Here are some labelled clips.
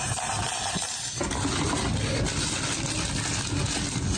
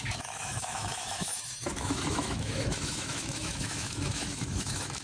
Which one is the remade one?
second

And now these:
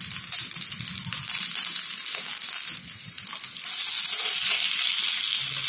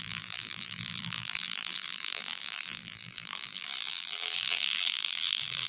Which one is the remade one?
second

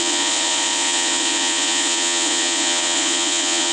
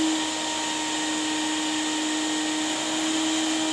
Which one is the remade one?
first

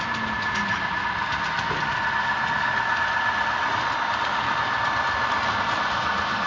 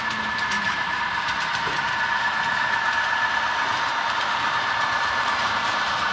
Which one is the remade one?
second